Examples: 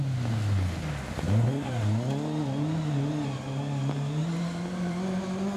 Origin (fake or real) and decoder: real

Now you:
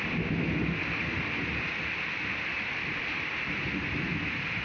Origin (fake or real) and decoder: real